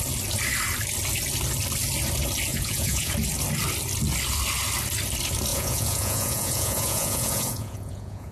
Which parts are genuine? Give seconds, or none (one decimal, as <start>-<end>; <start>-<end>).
0.0-2.5; 3.1-5.5